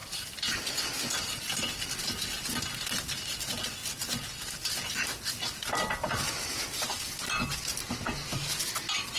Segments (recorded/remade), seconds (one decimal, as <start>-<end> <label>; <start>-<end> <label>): 0.0-2.6 remade; 2.6-9.2 recorded